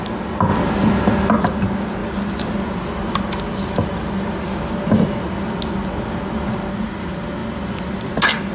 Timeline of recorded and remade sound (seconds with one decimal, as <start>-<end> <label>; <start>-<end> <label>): 0.0-0.5 recorded; 0.5-1.3 remade; 1.3-2.0 recorded; 2.0-5.3 remade; 5.3-8.5 recorded